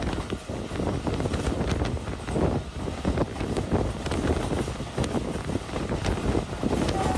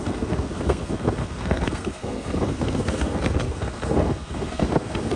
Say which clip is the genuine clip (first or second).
first